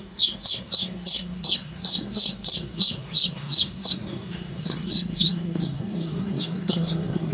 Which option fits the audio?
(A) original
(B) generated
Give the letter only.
B